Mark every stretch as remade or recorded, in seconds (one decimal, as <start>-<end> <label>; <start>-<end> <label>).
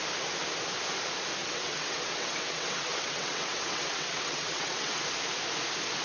0.0-1.4 recorded; 1.4-5.0 remade; 5.0-6.0 recorded